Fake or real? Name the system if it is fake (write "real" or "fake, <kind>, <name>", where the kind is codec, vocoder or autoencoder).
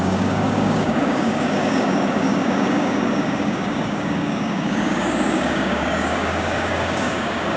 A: fake, codec, DAC